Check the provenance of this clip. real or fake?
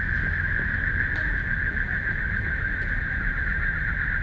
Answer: real